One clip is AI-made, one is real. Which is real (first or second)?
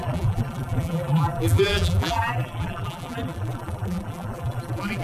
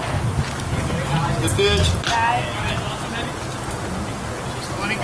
second